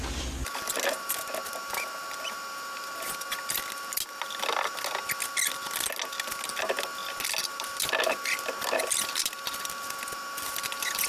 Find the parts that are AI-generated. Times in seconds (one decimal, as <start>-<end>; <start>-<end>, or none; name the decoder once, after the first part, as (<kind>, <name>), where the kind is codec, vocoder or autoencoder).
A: none